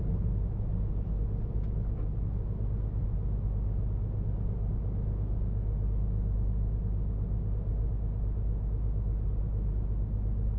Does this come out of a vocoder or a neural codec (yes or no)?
no